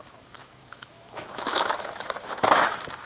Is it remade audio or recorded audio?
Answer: remade